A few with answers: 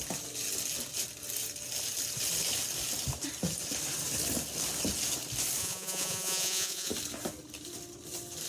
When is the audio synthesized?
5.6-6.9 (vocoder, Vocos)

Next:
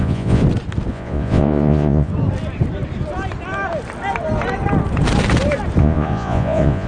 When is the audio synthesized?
0.0-0.4 (vocoder, Vocos); 0.9-2.1; 5.8-6.9

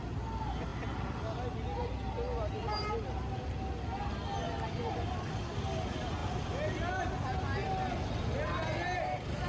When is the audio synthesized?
none

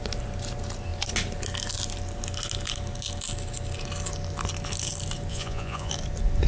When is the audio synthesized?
5.3-5.9 (vocoder, Vocos)

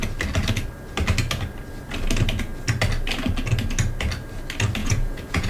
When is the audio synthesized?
4.8-5.5 (vocoder, Vocos)

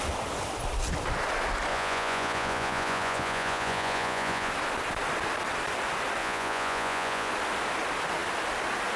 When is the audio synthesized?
1.7-4.5 (vocoder, Vocos); 6.2-7.3